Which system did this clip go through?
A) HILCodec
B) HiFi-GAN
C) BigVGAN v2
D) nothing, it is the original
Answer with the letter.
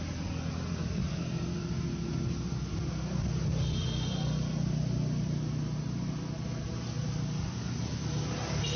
D